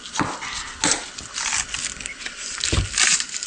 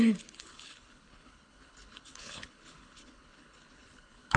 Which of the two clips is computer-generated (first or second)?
second